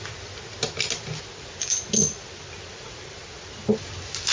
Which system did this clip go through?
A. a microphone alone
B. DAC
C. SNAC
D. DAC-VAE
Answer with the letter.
A